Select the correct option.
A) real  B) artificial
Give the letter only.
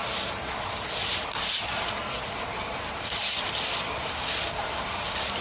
A